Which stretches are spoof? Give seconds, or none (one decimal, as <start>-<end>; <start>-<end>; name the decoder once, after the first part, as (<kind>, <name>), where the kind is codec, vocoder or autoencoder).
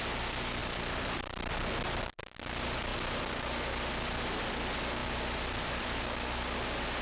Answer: 0.6-1.5 (vocoder, BigVGAN v2); 5.0-6.0